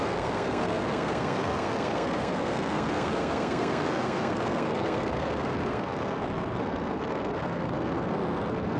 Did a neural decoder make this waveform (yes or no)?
yes